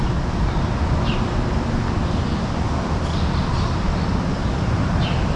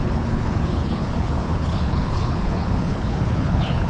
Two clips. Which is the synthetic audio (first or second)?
second